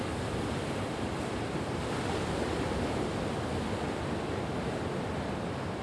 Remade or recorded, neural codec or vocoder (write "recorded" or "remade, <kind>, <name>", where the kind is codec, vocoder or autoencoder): recorded